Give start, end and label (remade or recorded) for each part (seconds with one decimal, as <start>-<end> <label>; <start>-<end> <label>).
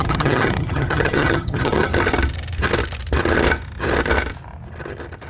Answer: 0.0-1.9 remade; 1.9-5.3 recorded